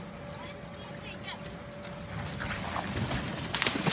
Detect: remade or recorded recorded